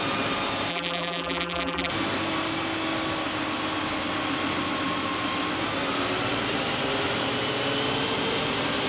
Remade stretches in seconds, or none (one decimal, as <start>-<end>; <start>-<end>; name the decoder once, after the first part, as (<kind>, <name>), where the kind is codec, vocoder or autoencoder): 0.7-1.9 (vocoder, BigVGAN v2)